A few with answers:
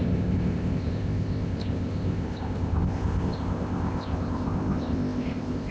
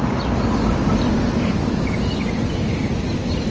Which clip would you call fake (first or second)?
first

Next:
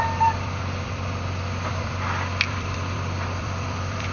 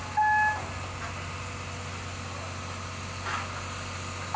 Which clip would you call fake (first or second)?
first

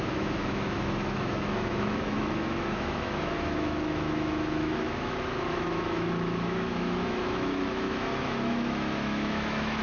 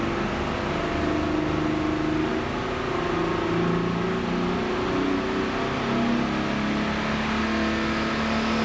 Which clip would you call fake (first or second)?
first